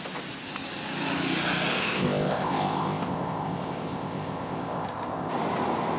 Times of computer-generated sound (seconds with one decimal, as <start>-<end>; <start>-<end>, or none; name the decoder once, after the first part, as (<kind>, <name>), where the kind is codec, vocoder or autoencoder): 1.7-5.3 (codec, ZipCodec)